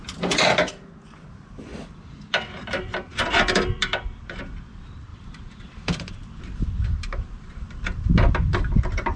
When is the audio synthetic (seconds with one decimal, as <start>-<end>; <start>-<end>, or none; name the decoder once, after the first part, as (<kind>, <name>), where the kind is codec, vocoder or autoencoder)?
1.7-4.4 (vocoder, BigVGAN v2); 5.1-6.1